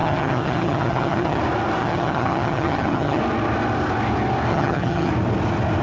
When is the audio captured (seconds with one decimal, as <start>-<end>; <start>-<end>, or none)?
1.4-1.8; 3.2-4.5; 5.1-5.8